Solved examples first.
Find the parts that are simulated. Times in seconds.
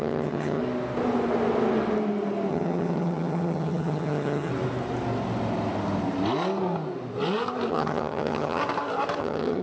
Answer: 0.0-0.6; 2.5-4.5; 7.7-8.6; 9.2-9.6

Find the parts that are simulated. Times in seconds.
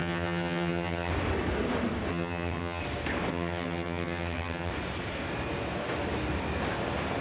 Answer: 0.0-1.1; 2.1-2.8; 3.3-4.7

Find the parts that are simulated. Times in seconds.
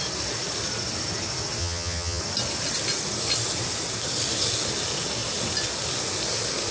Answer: 1.6-2.2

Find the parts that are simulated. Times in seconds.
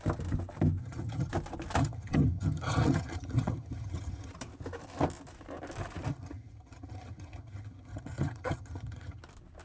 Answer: 0.8-1.3; 1.8-4.3; 6.1-9.2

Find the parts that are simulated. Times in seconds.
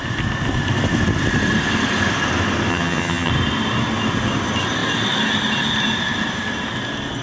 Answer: 2.7-3.3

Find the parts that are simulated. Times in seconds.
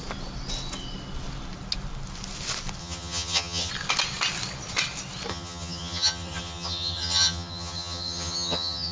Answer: 2.8-3.7; 5.3-8.9